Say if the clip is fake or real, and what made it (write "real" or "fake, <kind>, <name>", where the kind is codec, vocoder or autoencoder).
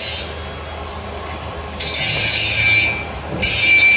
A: real